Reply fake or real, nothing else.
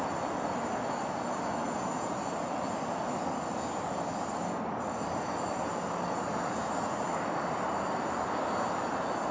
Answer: real